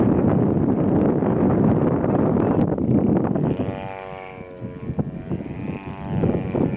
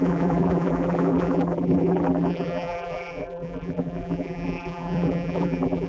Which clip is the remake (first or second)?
second